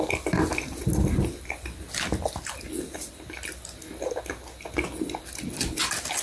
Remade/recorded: recorded